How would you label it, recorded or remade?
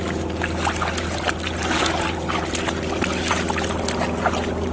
recorded